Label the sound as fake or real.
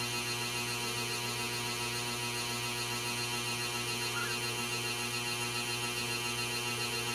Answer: real